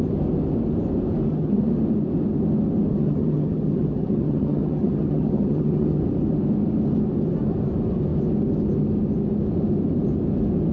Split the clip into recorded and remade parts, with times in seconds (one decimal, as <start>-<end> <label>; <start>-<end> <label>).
0.0-1.3 recorded; 1.3-1.8 remade; 1.8-2.9 recorded; 2.9-6.0 remade; 6.0-10.7 recorded